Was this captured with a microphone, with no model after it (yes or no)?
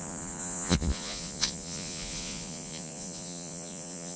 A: no